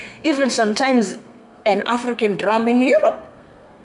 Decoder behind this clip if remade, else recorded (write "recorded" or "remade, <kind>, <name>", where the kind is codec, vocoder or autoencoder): remade, codec, SNAC